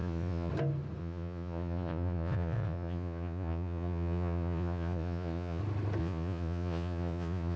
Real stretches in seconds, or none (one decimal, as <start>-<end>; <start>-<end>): 0.5-1.0; 5.6-6.0